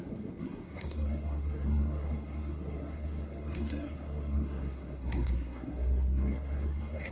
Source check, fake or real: fake